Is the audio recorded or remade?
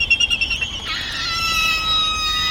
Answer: recorded